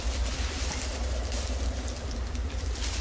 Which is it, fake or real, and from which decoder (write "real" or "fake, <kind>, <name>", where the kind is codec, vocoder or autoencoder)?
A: real